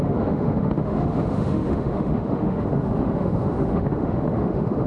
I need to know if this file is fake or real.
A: fake